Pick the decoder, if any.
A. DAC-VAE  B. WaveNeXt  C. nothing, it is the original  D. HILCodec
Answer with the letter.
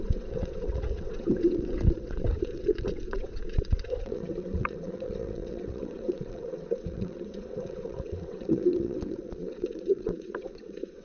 B